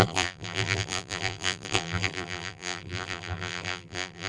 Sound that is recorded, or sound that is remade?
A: remade